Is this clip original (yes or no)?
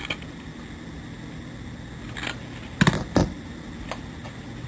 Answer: yes